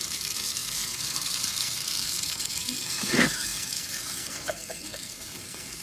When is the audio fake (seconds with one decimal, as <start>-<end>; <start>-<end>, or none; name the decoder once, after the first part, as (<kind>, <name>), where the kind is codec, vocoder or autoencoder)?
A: 0.0-5.8 (codec, SNAC)